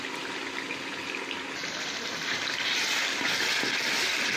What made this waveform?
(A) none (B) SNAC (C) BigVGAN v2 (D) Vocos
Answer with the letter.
A